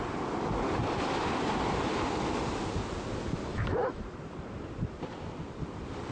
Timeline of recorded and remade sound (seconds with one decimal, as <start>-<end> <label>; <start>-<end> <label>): 0.0-3.5 recorded; 3.5-4.0 remade; 4.0-6.1 recorded